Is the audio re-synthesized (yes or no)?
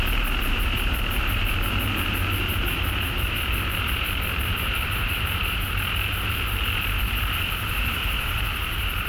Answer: yes